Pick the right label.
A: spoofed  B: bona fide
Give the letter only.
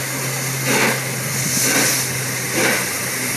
B